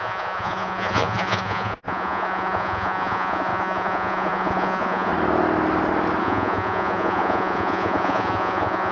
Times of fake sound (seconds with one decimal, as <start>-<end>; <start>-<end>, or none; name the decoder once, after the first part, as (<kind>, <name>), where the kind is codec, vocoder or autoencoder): 0.0-5.1 (vocoder, Vocos); 6.2-8.9